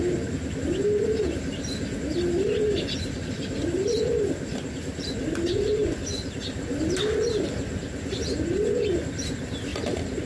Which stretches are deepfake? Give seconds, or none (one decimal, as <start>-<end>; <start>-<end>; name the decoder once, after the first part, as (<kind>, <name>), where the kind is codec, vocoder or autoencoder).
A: 9.7-10.3 (vocoder, BigVGAN v2)